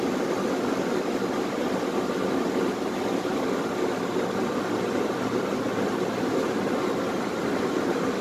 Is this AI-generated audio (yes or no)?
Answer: no